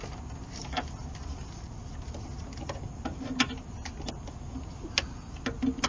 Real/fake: real